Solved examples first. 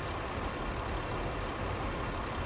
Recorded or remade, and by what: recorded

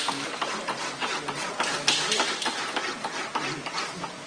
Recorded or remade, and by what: recorded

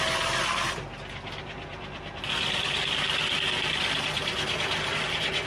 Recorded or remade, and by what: recorded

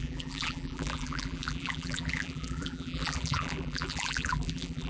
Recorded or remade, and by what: remade, vocoder, BigVGAN v2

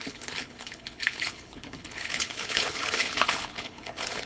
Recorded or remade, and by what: remade, codec, HILCodec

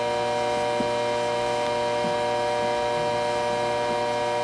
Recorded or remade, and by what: recorded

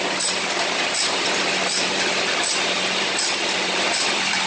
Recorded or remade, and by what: remade, vocoder, BigVGAN v2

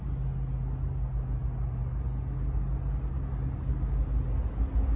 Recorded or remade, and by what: recorded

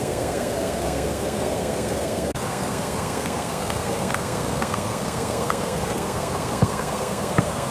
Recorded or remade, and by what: remade, codec, SNAC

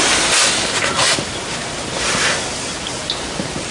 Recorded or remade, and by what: recorded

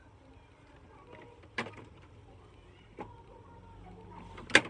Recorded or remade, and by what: recorded